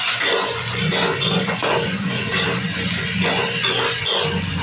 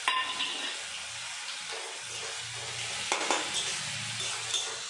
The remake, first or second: first